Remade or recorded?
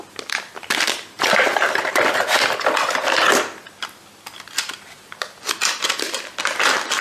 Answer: recorded